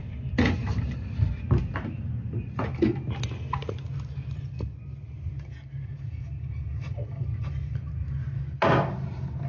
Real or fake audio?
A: real